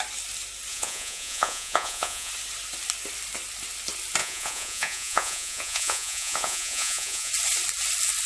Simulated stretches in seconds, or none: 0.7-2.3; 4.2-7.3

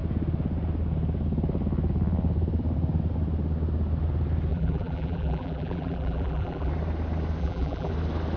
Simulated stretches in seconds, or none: 4.5-6.7; 7.4-7.9

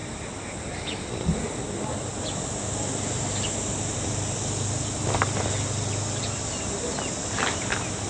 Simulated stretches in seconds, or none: none

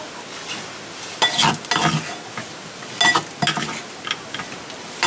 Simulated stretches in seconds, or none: none